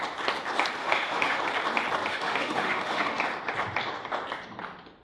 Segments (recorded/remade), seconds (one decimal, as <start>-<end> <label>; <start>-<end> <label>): 0.0-0.8 recorded; 0.8-1.4 remade; 1.4-2.1 recorded; 2.1-3.2 remade; 3.2-5.0 recorded